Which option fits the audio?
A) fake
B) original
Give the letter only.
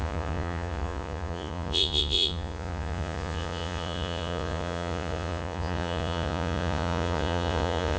A